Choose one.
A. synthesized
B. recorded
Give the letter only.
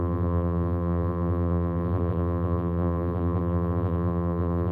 A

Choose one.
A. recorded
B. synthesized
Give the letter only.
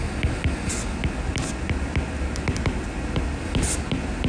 A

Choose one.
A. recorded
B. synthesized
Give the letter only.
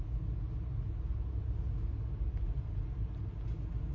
A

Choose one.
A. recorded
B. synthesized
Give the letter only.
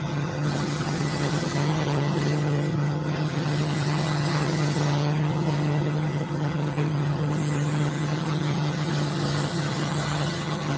B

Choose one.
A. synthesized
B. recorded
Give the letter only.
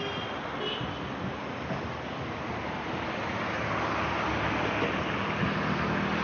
B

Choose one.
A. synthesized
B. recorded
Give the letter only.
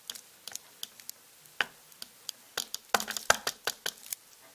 B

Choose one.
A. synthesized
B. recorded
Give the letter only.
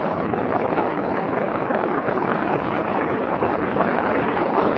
A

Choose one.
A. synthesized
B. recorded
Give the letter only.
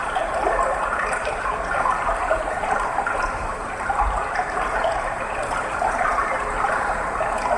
A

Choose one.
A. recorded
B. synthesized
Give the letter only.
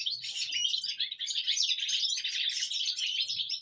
B